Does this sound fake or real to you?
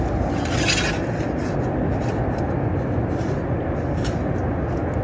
real